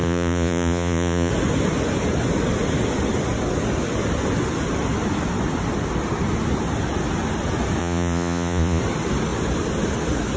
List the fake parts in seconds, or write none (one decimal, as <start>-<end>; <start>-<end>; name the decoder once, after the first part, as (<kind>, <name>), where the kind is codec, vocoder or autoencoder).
0.0-1.3 (vocoder, Vocos); 7.8-8.8